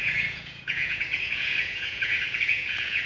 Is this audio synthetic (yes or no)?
yes